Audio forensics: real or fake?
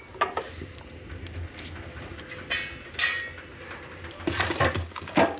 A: real